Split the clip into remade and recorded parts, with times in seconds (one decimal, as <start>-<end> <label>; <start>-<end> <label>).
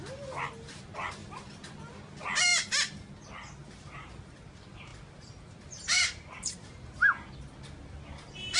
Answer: 0.0-8.6 recorded